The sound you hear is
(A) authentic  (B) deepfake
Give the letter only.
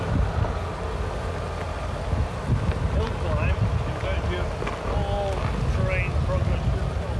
A